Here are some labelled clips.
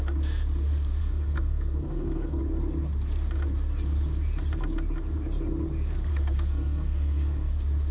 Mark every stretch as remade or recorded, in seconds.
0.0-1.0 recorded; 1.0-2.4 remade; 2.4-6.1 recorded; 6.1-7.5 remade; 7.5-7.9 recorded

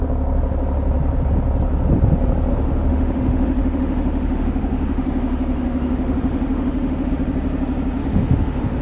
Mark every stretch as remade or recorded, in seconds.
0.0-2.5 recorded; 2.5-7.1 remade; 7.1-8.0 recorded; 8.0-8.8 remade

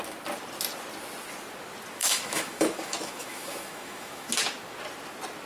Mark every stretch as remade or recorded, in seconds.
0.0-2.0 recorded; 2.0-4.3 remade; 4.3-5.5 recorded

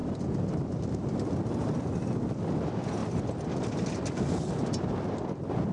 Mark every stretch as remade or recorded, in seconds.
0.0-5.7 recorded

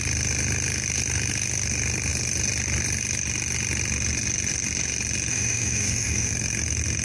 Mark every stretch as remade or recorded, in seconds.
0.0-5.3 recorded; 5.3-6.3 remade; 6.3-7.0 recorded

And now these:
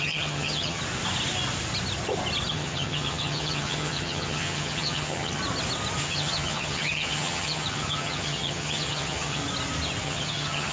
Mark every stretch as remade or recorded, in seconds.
0.0-0.8 remade; 0.8-2.5 recorded; 2.5-5.4 remade; 5.4-6.0 recorded; 6.0-9.4 remade; 9.4-10.0 recorded; 10.0-10.7 remade

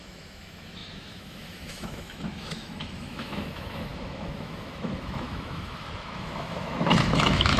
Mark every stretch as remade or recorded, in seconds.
0.0-7.6 remade

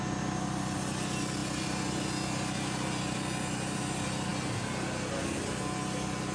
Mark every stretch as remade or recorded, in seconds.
0.0-6.3 recorded